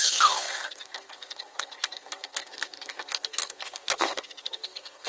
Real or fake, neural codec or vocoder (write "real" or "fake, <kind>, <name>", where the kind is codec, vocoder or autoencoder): fake, codec, SNAC